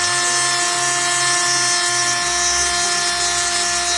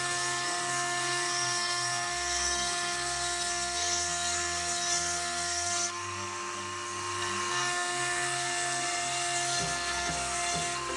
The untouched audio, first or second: first